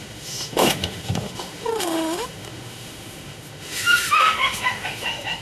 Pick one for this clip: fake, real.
fake